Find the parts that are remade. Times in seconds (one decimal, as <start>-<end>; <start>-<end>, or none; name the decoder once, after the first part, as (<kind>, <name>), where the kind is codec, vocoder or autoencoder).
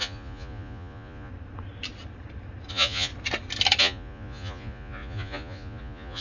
0.0-1.3 (vocoder, Vocos); 2.7-3.1; 3.8-6.2